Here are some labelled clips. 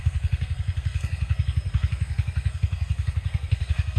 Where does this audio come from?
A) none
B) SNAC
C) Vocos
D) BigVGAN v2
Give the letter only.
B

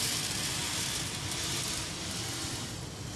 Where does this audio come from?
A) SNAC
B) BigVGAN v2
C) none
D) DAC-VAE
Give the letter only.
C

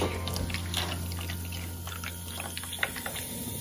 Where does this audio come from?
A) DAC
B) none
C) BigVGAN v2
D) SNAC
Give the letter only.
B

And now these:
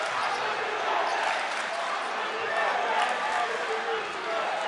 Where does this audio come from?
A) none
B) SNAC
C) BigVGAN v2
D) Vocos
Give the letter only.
A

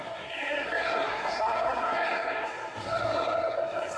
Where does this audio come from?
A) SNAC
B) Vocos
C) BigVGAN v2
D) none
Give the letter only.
A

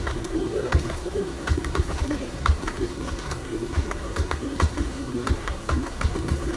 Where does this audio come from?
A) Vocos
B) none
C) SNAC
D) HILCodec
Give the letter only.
C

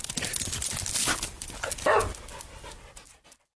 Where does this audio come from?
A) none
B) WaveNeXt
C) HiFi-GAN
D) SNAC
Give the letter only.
A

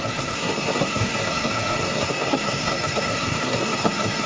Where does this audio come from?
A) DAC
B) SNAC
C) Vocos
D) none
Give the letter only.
B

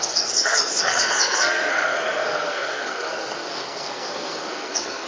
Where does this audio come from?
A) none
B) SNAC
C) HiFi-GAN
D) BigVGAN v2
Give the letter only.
B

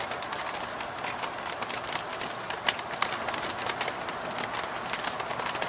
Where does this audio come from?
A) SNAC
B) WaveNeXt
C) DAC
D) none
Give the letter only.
D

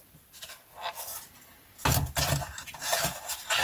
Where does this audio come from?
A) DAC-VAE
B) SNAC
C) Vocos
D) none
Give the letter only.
D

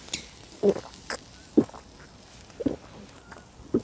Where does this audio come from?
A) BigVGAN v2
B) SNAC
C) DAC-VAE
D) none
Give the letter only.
D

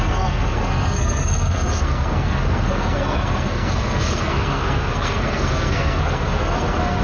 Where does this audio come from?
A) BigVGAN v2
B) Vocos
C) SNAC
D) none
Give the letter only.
C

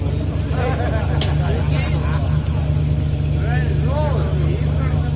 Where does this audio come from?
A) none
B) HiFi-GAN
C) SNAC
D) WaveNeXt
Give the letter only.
A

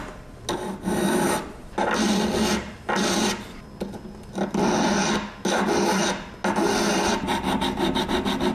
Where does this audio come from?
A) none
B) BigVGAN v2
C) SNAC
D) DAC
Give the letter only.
A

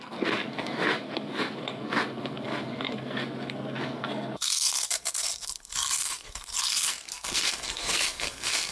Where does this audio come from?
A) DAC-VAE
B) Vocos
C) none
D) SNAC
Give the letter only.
D